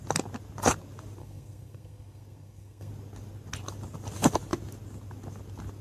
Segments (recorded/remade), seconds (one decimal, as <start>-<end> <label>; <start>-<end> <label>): 0.0-1.2 recorded; 1.2-2.9 remade; 2.9-5.8 recorded